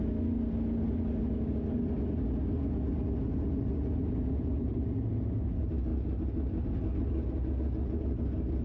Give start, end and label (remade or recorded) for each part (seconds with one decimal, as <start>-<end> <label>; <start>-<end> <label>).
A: 0.0-8.6 recorded